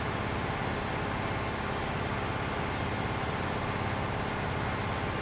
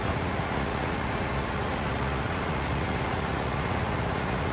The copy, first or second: second